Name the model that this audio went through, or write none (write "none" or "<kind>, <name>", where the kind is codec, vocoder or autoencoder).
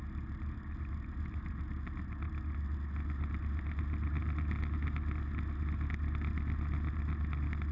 none